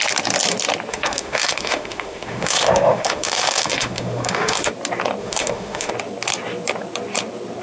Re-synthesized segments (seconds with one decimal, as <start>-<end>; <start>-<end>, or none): 0.9-4.7; 5.2-5.9